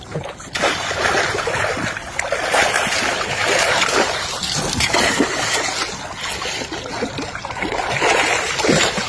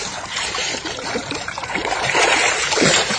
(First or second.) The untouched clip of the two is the first